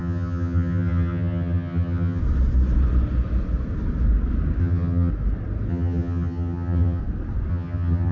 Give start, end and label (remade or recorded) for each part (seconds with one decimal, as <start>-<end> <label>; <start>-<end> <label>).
0.0-2.2 remade; 2.2-4.6 recorded; 4.6-5.1 remade; 5.1-5.7 recorded; 5.7-7.0 remade; 7.0-7.5 recorded; 7.5-8.1 remade

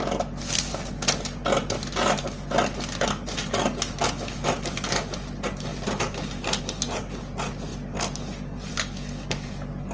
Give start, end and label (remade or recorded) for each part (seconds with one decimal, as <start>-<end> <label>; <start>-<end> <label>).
0.0-9.9 recorded

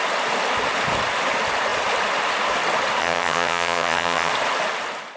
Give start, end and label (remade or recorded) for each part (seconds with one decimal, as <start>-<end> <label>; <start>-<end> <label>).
0.0-3.0 recorded; 3.0-4.3 remade; 4.3-5.2 recorded

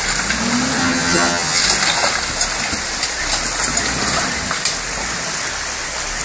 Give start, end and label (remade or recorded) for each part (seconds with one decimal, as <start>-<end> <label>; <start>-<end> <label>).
0.0-0.8 recorded; 0.8-1.6 remade; 1.6-6.2 recorded

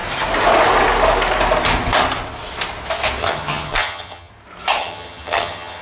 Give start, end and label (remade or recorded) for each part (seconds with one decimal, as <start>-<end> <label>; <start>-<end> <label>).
0.0-3.2 recorded; 3.2-4.3 remade; 4.3-4.8 recorded; 4.8-5.8 remade

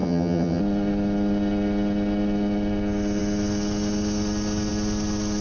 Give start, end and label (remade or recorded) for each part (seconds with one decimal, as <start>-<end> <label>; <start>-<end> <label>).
0.0-0.6 remade; 0.6-5.4 recorded

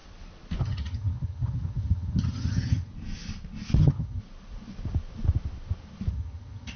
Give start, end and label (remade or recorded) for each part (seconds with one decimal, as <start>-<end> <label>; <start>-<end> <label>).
0.0-0.6 recorded; 0.6-2.9 remade; 2.9-3.8 recorded; 3.8-4.2 remade; 4.2-6.1 recorded; 6.1-6.8 remade